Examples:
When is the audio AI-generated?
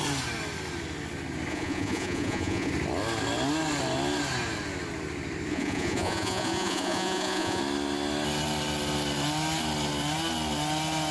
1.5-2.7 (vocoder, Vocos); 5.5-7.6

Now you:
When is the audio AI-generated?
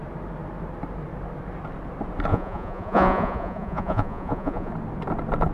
2.3-4.7 (vocoder, Vocos)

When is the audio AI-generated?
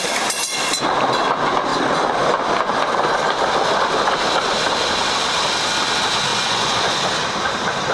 6.3-7.0 (vocoder, Vocos)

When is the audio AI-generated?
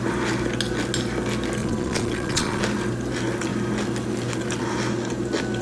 1.6-2.6 (vocoder, Vocos)